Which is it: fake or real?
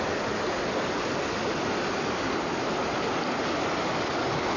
real